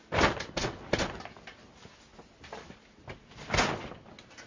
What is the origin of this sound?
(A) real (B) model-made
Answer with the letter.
A